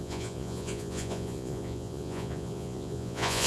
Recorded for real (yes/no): no